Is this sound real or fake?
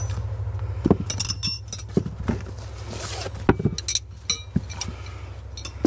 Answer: real